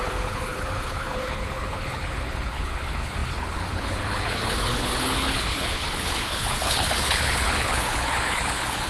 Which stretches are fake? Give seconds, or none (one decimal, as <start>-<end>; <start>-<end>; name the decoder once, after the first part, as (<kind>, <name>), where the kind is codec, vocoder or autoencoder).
0.0-8.9 (codec, HILCodec)